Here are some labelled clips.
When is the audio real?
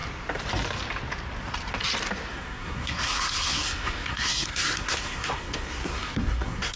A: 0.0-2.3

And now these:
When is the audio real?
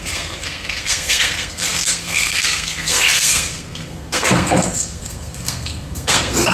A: none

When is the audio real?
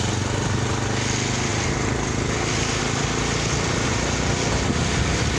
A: 0.0-5.4